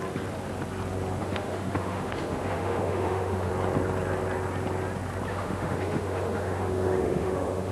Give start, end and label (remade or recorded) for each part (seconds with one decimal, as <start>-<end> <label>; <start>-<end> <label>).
0.0-1.2 recorded; 1.2-3.5 remade; 3.5-5.3 recorded; 5.3-7.7 remade